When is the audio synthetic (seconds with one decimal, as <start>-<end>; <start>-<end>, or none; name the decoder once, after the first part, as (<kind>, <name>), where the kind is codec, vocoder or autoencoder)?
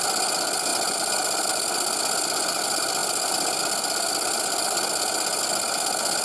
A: none